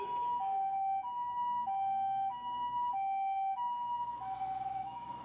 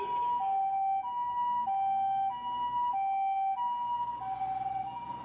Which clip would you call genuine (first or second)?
second